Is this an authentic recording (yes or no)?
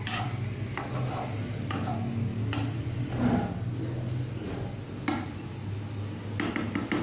yes